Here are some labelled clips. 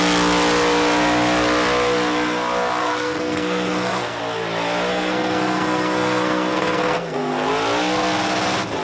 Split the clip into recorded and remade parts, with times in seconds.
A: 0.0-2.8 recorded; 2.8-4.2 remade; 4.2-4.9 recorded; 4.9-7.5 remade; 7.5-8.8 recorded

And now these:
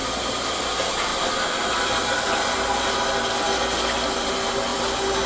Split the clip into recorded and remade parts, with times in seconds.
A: 0.0-5.3 recorded